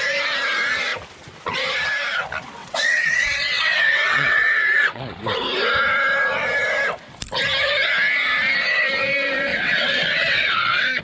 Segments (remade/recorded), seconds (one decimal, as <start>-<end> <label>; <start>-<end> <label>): 0.0-2.6 recorded; 2.6-5.0 remade; 5.0-9.5 recorded; 9.5-11.0 remade